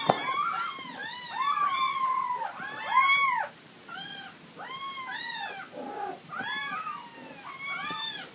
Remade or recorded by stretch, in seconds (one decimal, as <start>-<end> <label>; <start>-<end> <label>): 0.0-1.0 recorded; 1.0-2.8 remade; 2.8-8.3 recorded